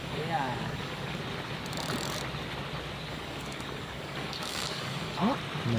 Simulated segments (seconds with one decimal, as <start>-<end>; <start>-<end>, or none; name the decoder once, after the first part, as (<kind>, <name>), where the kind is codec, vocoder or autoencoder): 0.0-1.2 (codec, DAC); 3.1-5.2